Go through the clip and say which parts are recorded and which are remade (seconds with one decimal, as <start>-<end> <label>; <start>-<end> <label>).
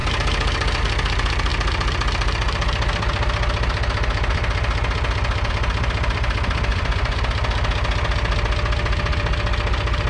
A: 0.0-6.7 recorded; 6.7-7.2 remade; 7.2-10.1 recorded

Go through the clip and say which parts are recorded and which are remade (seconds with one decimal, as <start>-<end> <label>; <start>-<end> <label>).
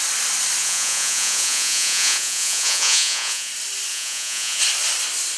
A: 0.0-0.6 recorded; 0.6-3.5 remade; 3.5-3.9 recorded; 3.9-4.6 remade; 4.6-5.4 recorded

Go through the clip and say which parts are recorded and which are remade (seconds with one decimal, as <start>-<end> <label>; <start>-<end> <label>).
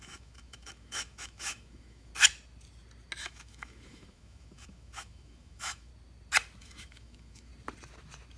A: 0.0-2.1 remade; 2.1-3.2 recorded; 3.2-5.9 remade; 5.9-6.6 recorded; 6.6-7.5 remade; 7.5-8.4 recorded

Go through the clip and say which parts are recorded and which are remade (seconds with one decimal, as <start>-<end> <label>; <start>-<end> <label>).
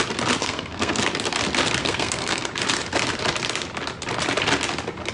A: 0.0-0.4 recorded; 0.4-1.0 remade; 1.0-1.8 recorded; 1.8-2.5 remade; 2.5-5.1 recorded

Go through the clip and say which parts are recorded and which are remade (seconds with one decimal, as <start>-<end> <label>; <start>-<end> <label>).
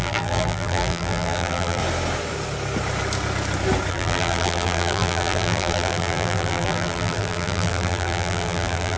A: 0.0-1.8 remade; 1.8-3.9 recorded; 3.9-9.0 remade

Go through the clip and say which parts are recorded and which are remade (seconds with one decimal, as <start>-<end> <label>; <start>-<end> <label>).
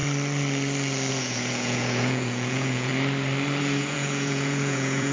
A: 0.0-1.1 recorded; 1.1-2.9 remade; 2.9-3.6 recorded; 3.6-5.1 remade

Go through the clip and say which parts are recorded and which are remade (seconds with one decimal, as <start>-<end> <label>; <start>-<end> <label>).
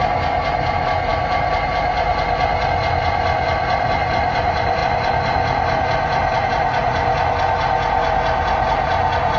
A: 0.0-9.4 recorded